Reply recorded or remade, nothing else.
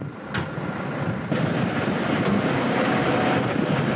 recorded